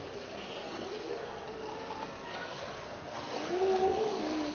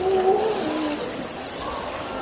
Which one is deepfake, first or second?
first